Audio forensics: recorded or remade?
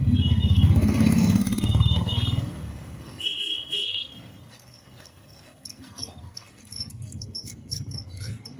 remade